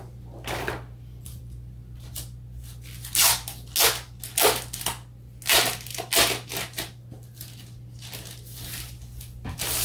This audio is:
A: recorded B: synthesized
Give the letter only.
A